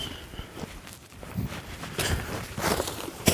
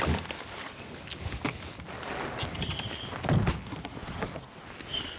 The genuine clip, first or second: second